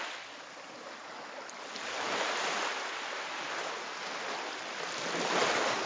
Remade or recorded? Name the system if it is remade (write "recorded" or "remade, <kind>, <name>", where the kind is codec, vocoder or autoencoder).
recorded